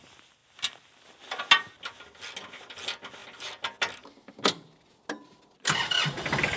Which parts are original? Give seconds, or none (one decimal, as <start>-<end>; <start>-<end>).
0.0-6.6